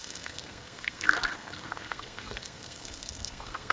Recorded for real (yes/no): no